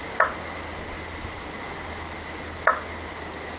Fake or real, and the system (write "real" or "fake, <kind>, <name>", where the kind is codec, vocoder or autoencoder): real